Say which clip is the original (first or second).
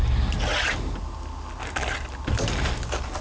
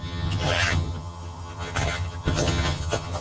first